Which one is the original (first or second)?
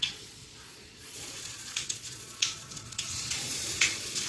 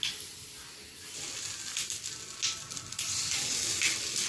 second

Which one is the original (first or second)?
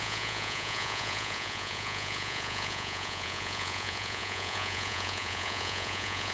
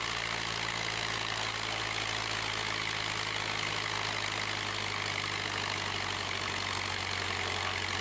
second